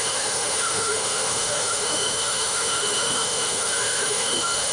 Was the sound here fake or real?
fake